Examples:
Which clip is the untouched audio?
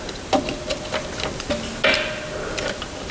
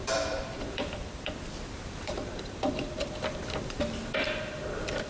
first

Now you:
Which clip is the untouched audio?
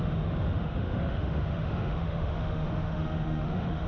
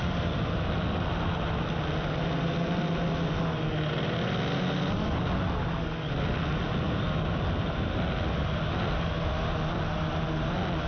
second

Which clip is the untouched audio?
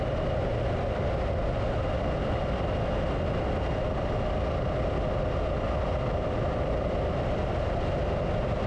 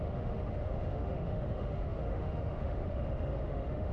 first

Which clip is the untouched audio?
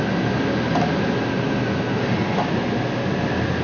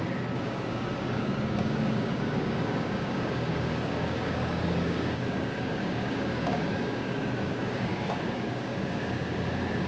first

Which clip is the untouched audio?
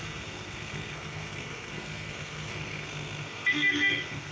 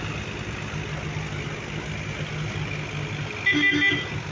second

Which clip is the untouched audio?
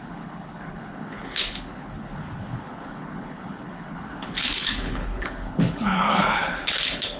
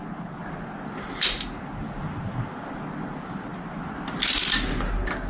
second